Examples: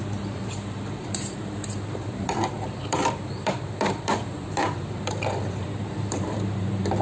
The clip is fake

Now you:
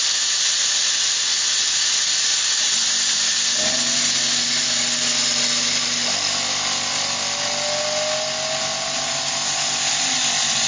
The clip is real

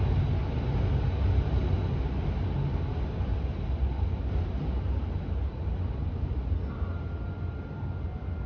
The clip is real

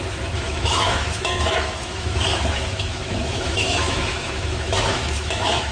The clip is fake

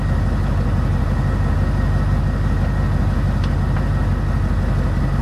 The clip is real